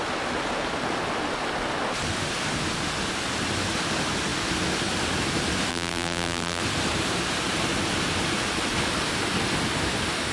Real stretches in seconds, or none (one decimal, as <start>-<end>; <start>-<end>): 0.0-5.7; 6.6-10.3